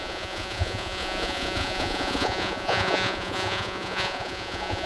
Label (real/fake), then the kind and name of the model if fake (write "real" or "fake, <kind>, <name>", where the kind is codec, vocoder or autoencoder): fake, vocoder, Vocos